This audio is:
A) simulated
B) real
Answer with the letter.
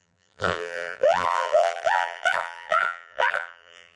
A